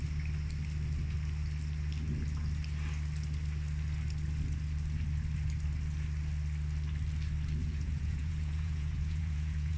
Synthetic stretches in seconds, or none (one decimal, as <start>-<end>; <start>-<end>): 7.6-9.8